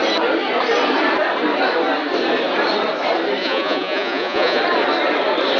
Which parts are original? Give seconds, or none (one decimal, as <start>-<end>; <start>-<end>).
0.0-3.4; 4.6-5.6